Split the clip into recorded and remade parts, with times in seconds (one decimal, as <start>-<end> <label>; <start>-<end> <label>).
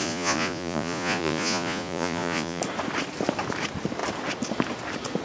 0.0-2.6 remade; 2.6-5.2 recorded